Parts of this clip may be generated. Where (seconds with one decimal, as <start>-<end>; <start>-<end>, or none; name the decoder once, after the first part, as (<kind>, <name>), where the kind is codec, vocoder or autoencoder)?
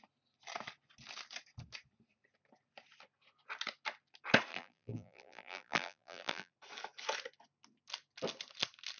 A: 4.5-6.5 (vocoder, BigVGAN v2)